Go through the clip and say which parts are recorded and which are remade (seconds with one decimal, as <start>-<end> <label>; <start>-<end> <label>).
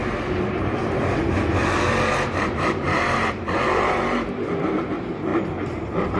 0.0-1.2 remade; 1.2-1.6 recorded; 1.6-4.8 remade; 4.8-5.3 recorded; 5.3-6.2 remade